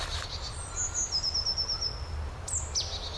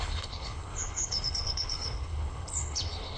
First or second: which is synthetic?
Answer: second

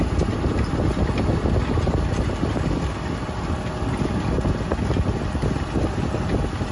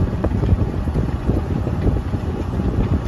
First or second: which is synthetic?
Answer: second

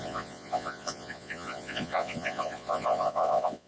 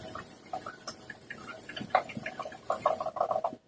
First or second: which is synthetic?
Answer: first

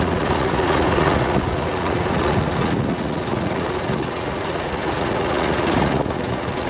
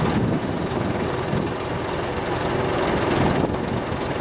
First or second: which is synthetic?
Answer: first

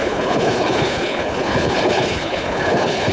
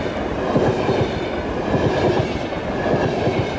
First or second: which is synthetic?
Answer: first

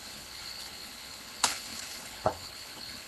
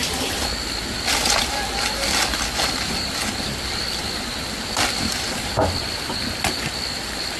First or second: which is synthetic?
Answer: first